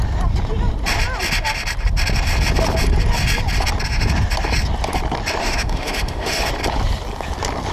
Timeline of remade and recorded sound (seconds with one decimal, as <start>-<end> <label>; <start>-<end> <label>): 0.0-5.4 recorded; 5.4-6.4 remade; 6.4-7.7 recorded